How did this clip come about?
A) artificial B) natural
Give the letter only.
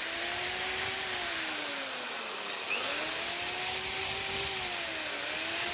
B